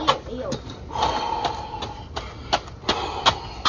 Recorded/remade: recorded